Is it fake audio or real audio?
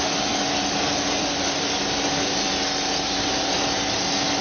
real